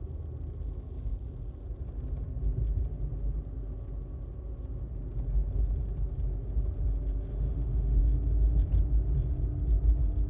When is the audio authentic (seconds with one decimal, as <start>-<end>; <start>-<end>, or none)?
0.0-7.3; 8.0-10.3